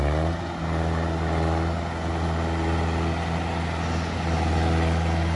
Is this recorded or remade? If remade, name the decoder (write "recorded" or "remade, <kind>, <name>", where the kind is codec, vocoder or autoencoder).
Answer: recorded